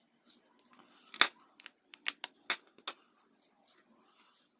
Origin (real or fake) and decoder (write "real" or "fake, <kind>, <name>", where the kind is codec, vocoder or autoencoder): real